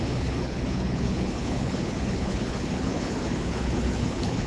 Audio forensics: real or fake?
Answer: fake